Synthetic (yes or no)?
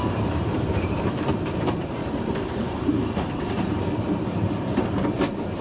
yes